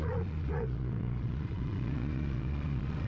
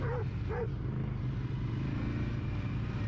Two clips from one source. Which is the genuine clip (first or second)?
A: second